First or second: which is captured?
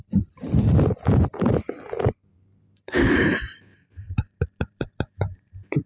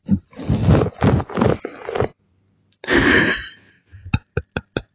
second